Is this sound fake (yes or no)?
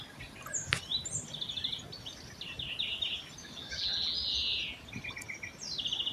no